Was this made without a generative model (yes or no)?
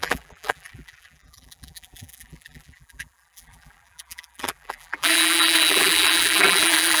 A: no